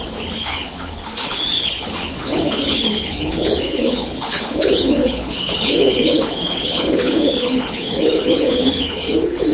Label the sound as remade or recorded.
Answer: remade